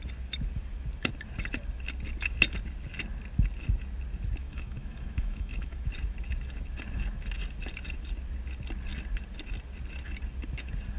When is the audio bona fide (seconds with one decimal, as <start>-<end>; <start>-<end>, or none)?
0.0-4.4; 5.9-11.0